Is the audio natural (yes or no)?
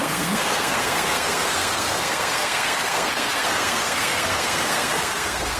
no